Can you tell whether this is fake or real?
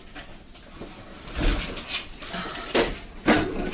real